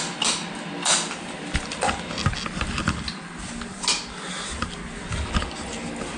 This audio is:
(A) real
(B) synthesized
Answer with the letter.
A